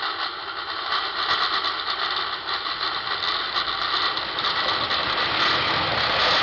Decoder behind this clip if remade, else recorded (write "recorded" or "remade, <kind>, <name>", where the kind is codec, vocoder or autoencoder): recorded